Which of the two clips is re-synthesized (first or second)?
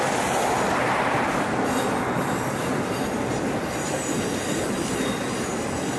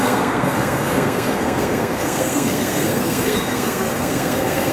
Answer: second